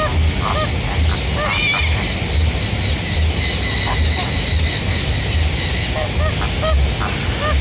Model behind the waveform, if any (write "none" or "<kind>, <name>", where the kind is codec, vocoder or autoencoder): none